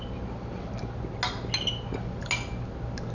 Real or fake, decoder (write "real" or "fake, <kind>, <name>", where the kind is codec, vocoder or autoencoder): real